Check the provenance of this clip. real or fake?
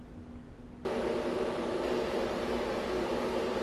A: real